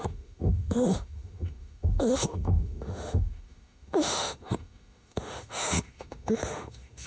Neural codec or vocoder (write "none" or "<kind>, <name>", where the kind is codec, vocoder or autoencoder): autoencoder, DAC-VAE